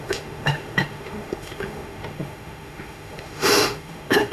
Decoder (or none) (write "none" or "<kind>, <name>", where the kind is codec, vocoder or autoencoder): autoencoder, DAC-VAE